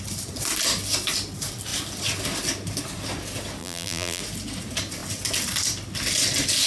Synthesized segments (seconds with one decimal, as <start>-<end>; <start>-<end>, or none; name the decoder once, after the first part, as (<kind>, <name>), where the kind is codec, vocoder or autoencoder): 3.6-4.2 (vocoder, BigVGAN v2)